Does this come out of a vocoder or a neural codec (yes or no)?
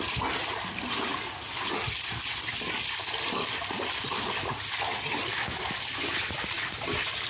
no